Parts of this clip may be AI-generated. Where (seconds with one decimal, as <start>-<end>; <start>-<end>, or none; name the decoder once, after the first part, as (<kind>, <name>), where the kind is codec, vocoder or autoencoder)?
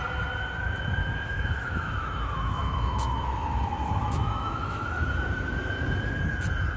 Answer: 1.0-5.1 (autoencoder, DAC-VAE)